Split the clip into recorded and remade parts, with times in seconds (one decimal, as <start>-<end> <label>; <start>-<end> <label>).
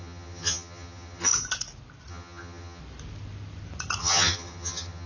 0.0-1.3 remade; 1.3-2.1 recorded; 2.1-2.8 remade; 2.8-4.0 recorded; 4.0-5.1 remade